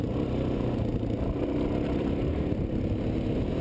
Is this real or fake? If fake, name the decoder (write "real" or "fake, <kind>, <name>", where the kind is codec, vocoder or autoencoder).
real